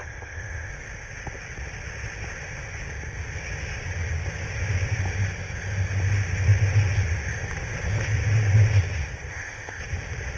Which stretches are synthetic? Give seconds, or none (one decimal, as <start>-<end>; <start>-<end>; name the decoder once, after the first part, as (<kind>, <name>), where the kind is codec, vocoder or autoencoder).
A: 0.0-0.7 (codec, ZipCodec); 9.3-9.8